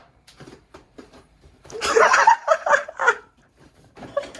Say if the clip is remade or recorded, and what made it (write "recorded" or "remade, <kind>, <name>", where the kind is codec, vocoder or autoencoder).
remade, vocoder, BigVGAN v2